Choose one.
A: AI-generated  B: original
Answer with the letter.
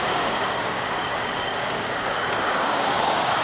A